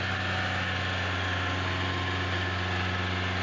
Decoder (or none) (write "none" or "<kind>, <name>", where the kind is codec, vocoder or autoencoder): none